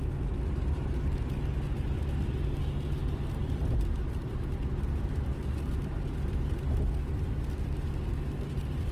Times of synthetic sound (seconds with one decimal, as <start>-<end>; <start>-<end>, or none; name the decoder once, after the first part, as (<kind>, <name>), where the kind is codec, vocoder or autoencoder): none